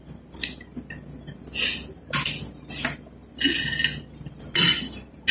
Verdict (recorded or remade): recorded